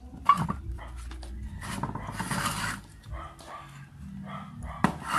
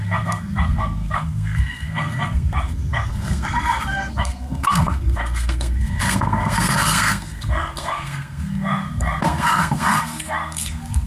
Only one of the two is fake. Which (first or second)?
second